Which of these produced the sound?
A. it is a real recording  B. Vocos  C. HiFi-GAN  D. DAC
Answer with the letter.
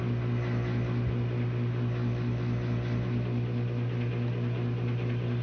A